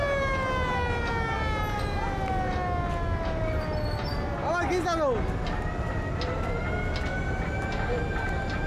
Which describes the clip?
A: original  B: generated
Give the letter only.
A